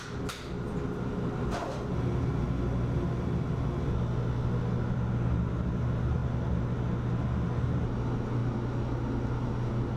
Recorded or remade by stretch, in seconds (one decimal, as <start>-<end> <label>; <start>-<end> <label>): 0.0-10.0 recorded